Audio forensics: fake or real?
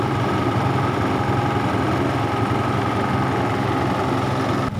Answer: real